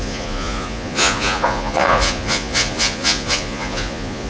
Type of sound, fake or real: fake